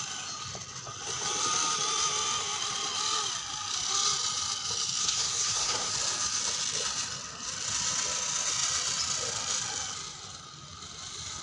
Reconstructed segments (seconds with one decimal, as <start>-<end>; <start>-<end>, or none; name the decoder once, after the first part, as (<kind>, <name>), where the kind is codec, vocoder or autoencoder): 5.0-5.9 (codec, SNAC)